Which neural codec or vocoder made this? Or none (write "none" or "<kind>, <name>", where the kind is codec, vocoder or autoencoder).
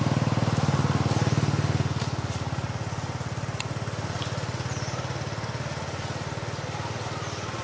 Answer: none